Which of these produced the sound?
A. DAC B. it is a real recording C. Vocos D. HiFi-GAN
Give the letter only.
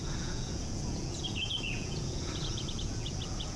C